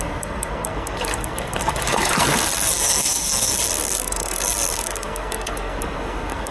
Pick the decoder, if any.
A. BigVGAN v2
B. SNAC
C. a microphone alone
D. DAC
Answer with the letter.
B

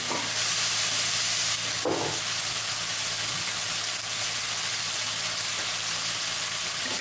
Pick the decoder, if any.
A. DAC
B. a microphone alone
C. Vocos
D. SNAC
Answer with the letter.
B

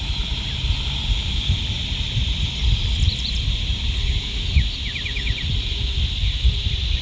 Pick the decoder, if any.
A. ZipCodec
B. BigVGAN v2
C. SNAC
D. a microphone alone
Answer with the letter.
D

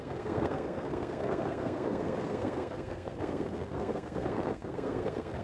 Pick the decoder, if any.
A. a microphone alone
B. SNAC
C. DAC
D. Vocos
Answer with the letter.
B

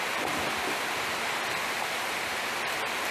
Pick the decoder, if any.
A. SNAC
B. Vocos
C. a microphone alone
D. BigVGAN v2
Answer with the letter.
C